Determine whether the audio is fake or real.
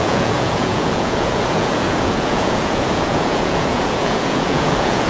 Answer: fake